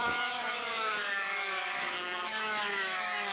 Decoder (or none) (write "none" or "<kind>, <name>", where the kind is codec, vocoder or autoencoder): autoencoder, DAC-VAE